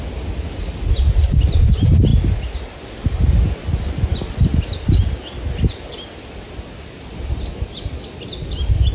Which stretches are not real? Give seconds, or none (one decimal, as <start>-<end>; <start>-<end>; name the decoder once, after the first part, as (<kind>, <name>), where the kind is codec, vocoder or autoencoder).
none